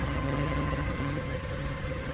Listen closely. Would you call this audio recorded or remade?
remade